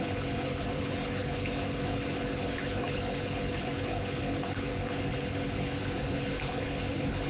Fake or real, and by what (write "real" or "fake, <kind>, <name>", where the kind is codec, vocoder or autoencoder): fake, codec, HILCodec